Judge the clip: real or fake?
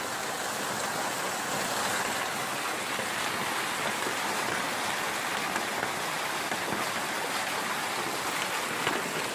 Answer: real